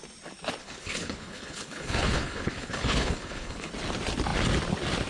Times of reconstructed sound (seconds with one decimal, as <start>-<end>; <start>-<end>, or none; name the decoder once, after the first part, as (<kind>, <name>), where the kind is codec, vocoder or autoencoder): 0.6-3.7 (codec, HILCodec)